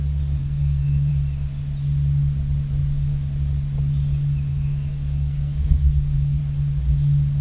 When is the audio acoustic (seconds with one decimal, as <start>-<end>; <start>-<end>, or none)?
0.0-0.4; 1.1-4.5; 6.4-7.4